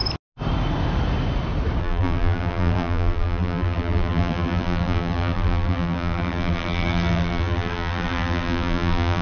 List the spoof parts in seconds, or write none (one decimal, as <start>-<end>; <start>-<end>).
1.8-9.2